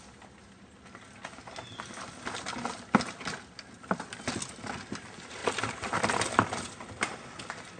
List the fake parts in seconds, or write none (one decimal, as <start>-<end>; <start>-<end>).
5.4-6.9